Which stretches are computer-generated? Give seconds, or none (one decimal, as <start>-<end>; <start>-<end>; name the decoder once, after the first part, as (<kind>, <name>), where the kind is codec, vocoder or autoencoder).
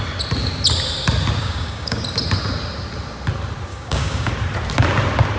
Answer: 1.4-2.0 (codec, DAC); 3.7-4.3